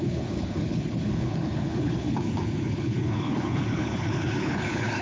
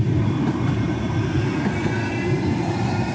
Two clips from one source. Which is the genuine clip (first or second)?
second